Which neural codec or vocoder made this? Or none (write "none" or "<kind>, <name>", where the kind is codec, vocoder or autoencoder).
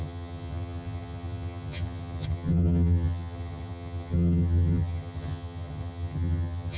vocoder, HiFi-GAN